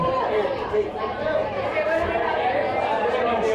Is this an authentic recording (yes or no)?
no